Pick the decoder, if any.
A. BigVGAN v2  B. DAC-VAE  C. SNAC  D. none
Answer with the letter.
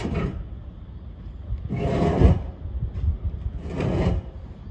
D